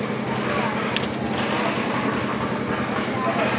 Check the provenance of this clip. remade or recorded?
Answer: recorded